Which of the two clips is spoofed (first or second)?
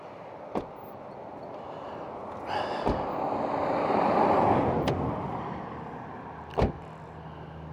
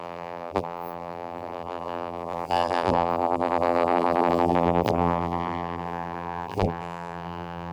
second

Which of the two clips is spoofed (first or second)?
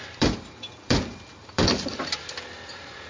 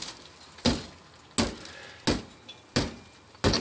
first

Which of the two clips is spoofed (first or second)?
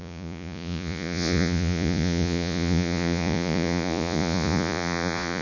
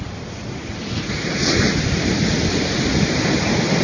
first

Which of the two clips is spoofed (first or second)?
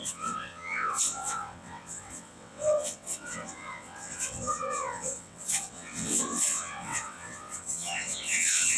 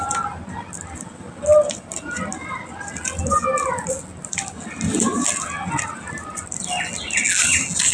first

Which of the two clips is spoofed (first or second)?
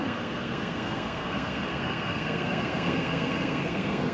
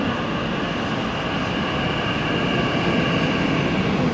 first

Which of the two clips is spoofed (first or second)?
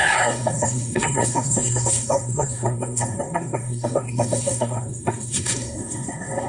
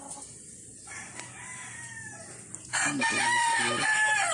first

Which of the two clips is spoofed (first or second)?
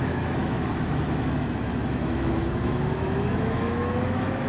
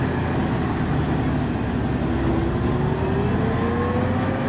first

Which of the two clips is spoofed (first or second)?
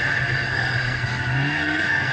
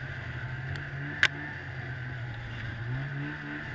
first